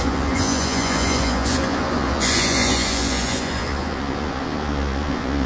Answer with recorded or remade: remade